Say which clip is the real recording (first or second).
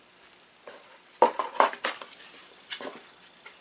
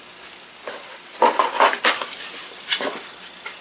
second